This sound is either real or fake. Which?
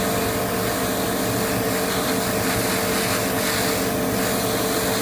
real